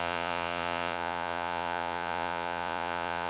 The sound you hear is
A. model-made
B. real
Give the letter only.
A